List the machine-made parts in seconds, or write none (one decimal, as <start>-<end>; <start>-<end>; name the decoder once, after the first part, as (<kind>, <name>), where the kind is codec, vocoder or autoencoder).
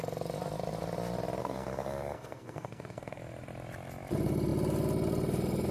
1.4-3.2 (codec, SNAC)